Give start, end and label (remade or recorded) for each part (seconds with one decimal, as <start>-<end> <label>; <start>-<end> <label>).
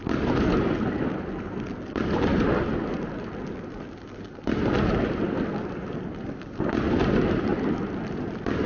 0.0-8.7 recorded